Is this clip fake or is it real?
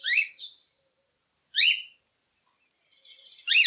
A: real